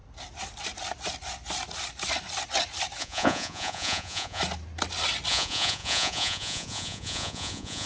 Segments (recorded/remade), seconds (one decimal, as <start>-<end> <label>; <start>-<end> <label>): 0.0-3.0 recorded; 3.0-4.4 remade; 4.4-5.3 recorded; 5.3-7.9 remade